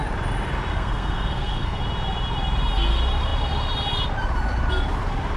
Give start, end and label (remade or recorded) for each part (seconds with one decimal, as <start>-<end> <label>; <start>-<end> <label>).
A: 0.0-0.7 recorded; 0.7-1.8 remade; 1.8-5.4 recorded